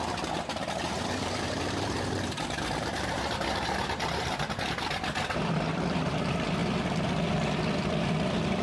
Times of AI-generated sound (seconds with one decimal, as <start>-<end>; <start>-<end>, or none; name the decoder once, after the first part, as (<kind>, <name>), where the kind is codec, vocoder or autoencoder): 0.6-5.1 (vocoder, BigVGAN v2)